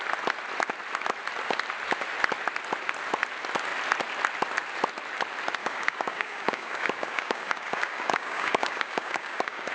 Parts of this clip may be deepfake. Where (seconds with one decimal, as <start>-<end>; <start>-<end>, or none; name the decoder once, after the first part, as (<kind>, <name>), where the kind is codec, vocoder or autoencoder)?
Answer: 5.6-9.7 (codec, DAC)